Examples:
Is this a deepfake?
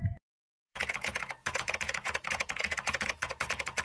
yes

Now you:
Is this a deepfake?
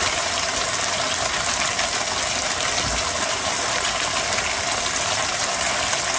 no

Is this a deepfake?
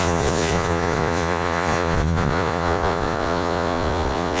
yes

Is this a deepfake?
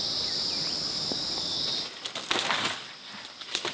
no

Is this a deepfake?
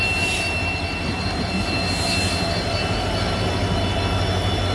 no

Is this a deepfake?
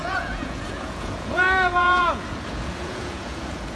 yes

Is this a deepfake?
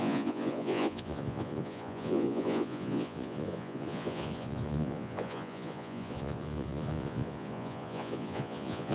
yes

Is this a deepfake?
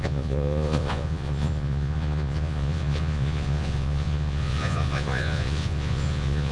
yes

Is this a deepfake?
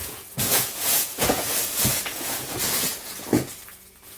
yes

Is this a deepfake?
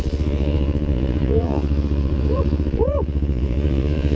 yes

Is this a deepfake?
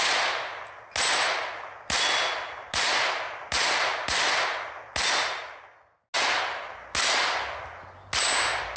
no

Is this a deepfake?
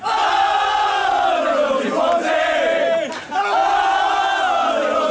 no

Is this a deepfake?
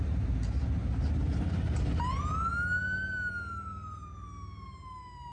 no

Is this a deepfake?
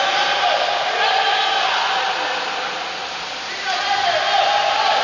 no